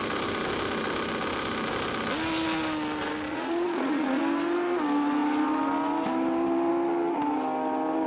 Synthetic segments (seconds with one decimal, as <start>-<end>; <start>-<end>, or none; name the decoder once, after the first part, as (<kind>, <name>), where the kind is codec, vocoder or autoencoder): 3.3-4.2 (vocoder, Vocos)